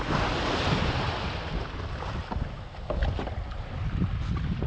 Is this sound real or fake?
real